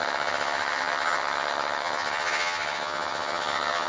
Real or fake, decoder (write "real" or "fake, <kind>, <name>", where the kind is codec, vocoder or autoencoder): fake, vocoder, HiFi-GAN